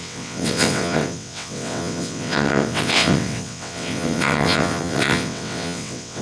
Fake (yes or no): yes